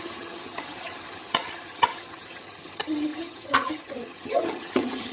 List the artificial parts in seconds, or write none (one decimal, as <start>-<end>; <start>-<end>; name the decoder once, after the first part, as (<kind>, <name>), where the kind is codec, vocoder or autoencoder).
0.0-5.1 (vocoder, HiFi-GAN)